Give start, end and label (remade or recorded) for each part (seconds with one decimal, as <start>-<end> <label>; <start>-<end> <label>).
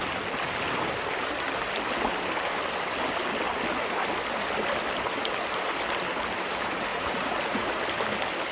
0.0-6.9 recorded; 6.9-7.8 remade; 7.8-8.5 recorded